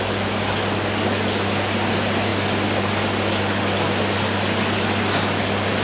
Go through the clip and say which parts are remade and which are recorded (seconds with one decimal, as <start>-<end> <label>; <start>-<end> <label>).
0.0-5.8 recorded